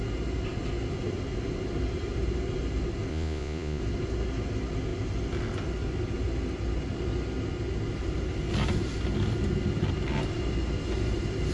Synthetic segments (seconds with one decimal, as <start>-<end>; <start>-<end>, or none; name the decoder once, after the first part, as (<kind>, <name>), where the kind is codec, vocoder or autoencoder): 3.1-3.8 (vocoder, Vocos)